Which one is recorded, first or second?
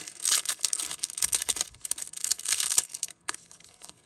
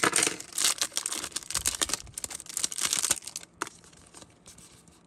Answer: second